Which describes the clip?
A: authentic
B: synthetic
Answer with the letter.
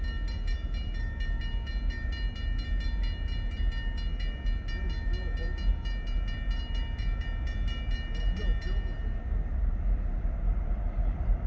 A